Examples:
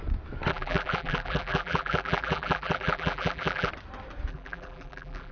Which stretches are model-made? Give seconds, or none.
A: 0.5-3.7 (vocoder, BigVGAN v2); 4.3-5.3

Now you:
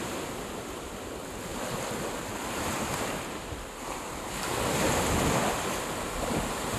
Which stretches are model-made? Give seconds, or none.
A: none

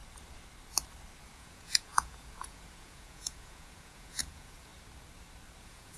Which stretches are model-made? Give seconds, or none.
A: 1.2-4.7 (vocoder, Vocos); 5.6-6.0

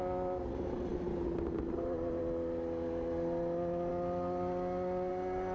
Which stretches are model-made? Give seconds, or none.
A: none

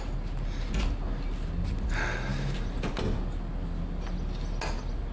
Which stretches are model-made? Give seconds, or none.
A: 2.3-2.9 (vocoder, BigVGAN v2)

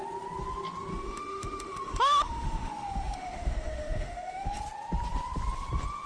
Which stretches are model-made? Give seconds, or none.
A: 0.9-4.6 (autoencoder, DAC-VAE)

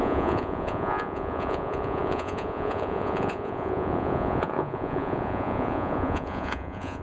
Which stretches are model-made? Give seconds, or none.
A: 0.0-7.0 (vocoder, Vocos)